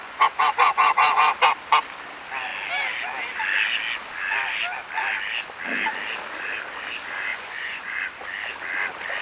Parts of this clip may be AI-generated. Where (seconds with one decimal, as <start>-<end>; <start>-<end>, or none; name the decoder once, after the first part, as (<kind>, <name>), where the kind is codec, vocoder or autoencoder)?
0.0-1.3 (vocoder, Vocos); 7.3-8.0